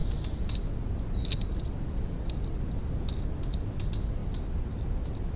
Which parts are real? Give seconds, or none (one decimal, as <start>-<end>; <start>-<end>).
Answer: 0.0-5.4